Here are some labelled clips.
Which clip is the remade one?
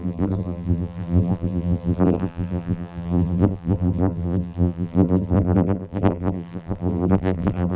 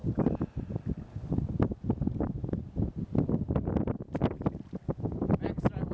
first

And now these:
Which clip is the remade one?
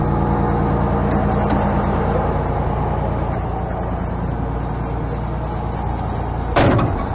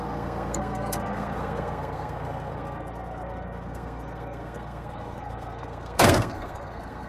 second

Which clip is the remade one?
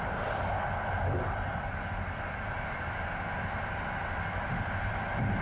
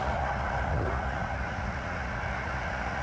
second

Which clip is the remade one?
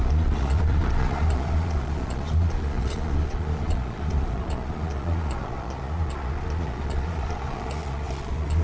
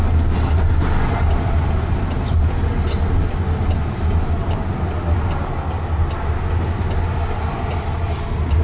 first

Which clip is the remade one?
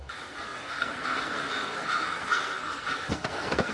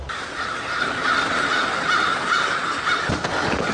first